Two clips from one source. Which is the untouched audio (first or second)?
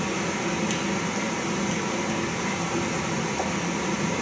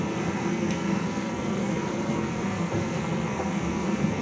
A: first